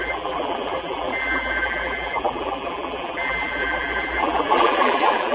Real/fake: fake